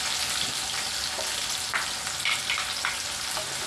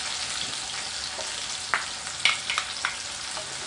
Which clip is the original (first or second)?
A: second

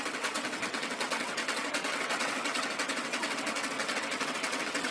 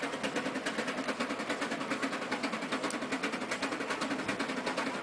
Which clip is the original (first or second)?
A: second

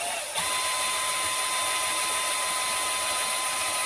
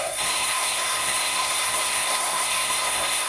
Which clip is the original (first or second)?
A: first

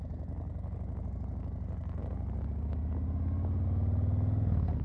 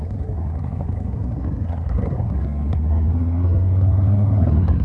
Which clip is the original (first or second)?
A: first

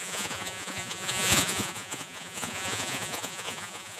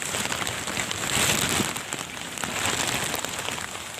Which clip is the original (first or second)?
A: second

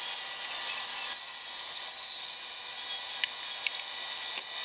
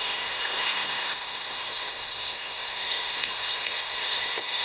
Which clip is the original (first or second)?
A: first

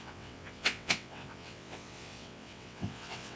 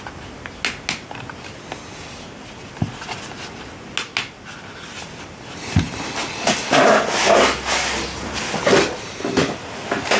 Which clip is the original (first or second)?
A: second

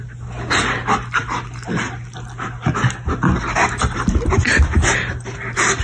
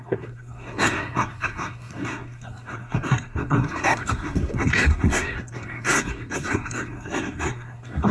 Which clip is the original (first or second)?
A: first